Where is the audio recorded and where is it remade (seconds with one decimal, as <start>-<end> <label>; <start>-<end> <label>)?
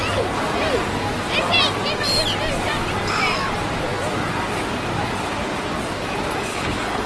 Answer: 0.0-6.5 recorded; 6.5-7.1 remade